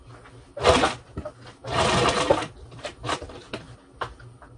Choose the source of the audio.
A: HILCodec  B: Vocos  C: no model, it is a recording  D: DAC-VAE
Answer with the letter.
C